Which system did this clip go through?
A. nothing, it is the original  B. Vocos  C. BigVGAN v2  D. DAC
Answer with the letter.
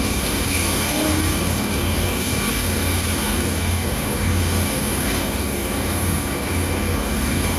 D